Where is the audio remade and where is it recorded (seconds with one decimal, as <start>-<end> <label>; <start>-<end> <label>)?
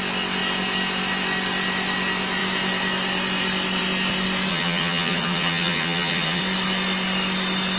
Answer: 0.0-4.5 recorded; 4.5-6.4 remade; 6.4-7.8 recorded